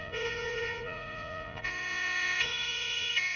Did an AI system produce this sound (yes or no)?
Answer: yes